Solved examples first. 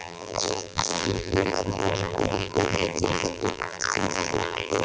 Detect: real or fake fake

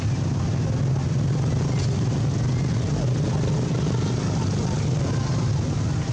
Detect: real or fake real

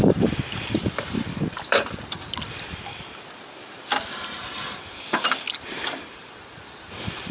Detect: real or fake fake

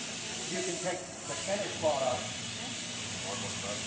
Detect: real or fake fake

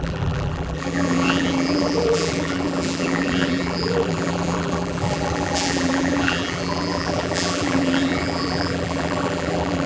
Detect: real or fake fake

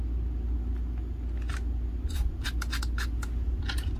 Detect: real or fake real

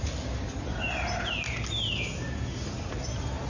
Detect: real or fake real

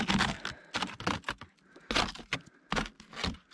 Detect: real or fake real